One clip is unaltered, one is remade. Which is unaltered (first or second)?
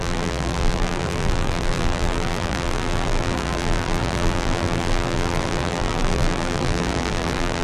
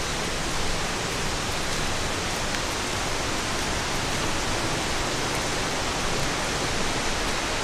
second